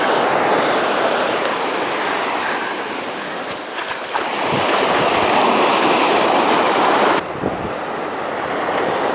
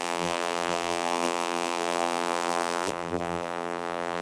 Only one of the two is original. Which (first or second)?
first